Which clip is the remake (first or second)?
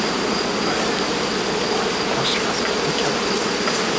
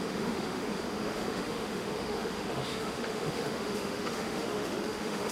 second